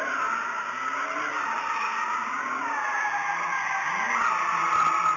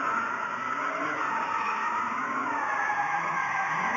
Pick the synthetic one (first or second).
second